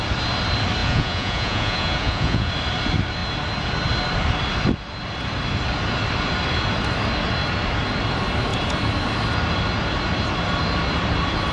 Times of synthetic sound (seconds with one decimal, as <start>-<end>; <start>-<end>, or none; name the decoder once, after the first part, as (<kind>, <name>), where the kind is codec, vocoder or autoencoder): 0.8-2.5 (vocoder, Vocos)